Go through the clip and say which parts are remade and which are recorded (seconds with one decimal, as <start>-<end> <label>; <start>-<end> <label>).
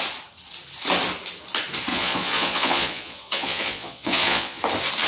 0.0-1.9 recorded; 1.9-4.6 remade; 4.6-5.1 recorded